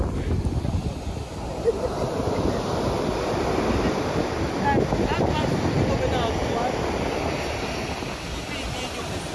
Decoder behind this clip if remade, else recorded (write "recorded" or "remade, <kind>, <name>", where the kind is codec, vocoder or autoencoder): recorded